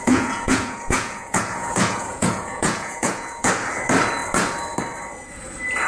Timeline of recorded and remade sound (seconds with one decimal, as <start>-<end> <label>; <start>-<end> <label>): 0.0-3.5 remade; 3.5-5.9 recorded